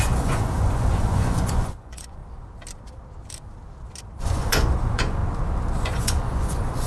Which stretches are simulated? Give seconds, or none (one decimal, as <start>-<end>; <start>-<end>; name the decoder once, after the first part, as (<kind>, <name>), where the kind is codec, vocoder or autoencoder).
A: 0.0-2.2 (vocoder, Vocos); 4.2-5.2; 5.8-6.9